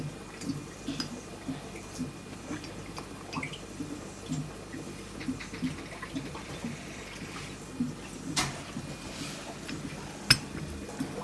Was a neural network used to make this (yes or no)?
no